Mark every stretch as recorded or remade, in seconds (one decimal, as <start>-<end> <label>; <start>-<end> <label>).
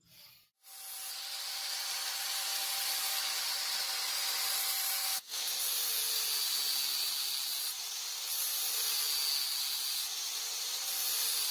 0.0-5.0 recorded; 5.0-5.5 remade; 5.5-11.5 recorded